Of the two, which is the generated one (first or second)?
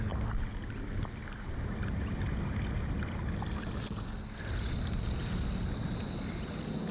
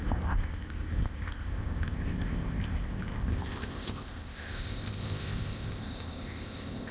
second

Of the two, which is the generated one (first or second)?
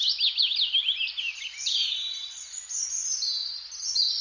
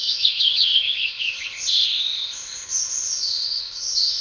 second